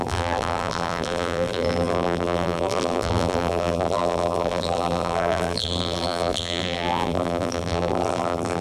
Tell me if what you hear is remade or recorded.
remade